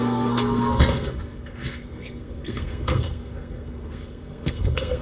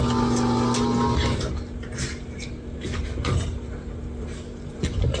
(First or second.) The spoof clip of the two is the first